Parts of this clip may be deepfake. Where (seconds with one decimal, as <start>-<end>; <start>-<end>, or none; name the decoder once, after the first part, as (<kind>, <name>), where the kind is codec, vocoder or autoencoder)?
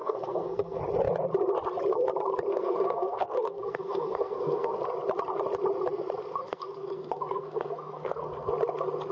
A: 0.0-0.8 (codec, SNAC); 2.5-4.8; 6.4-8.5